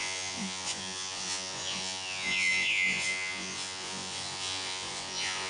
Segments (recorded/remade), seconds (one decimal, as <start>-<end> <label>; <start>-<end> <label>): 0.0-5.5 remade

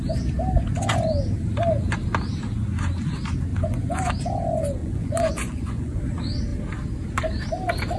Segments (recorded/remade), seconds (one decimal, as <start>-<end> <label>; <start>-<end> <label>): 0.0-3.5 recorded; 3.5-4.1 remade; 4.1-4.8 recorded; 4.8-6.0 remade; 6.0-8.0 recorded

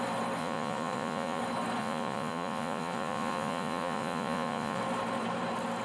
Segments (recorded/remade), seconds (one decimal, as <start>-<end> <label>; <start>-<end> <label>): 0.0-0.4 recorded; 0.4-1.4 remade; 1.4-1.8 recorded; 1.8-4.8 remade; 4.8-5.8 recorded